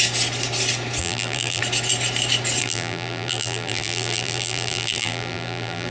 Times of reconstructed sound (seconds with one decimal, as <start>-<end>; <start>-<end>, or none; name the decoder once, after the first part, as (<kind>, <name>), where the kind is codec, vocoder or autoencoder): 1.0-1.6 (vocoder, BigVGAN v2); 2.6-5.9